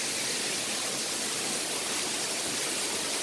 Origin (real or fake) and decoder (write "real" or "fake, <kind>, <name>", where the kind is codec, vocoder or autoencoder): real